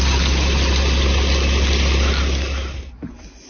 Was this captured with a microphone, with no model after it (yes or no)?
yes